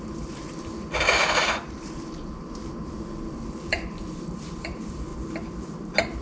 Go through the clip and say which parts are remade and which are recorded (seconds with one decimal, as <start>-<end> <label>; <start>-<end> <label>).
0.0-5.1 remade; 5.1-6.2 recorded

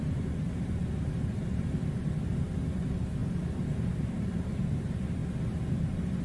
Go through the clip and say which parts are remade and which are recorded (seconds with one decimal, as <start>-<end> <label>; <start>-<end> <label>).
0.0-0.8 remade; 0.8-2.8 recorded; 2.8-3.2 remade; 3.2-3.9 recorded; 3.9-5.2 remade; 5.2-5.7 recorded; 5.7-6.2 remade

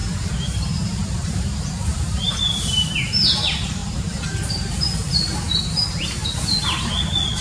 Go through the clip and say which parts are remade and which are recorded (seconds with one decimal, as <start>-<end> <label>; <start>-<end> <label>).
0.0-2.3 remade; 2.3-3.8 recorded; 3.8-4.8 remade; 4.8-7.4 recorded

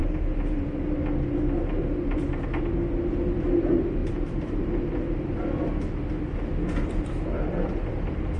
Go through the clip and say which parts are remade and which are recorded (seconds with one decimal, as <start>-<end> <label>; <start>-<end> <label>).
0.0-4.0 recorded; 4.0-4.6 remade; 4.6-8.4 recorded